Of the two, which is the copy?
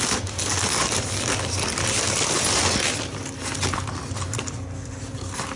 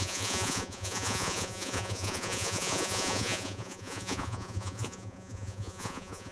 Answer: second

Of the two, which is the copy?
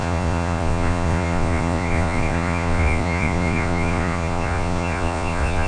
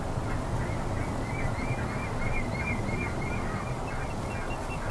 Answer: first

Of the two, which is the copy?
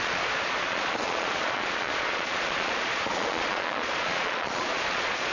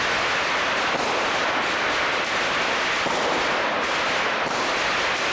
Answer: first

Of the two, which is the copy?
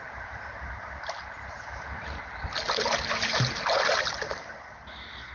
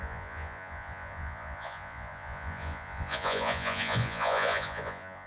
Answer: second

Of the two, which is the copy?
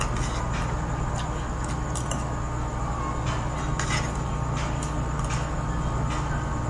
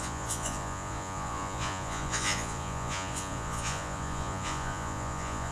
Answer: second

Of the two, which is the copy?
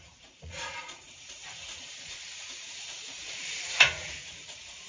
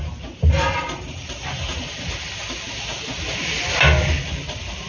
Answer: first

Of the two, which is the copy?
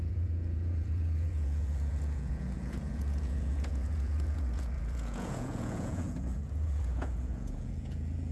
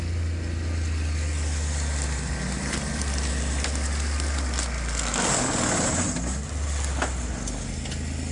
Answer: first